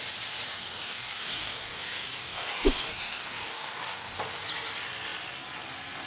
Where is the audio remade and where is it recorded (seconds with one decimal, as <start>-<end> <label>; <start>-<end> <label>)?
0.0-0.5 recorded; 0.5-4.2 remade; 4.2-6.1 recorded